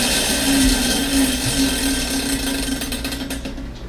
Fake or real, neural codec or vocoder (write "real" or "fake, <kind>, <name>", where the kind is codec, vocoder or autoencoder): real